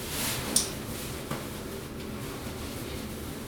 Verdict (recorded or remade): recorded